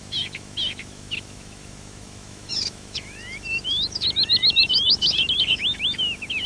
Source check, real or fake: fake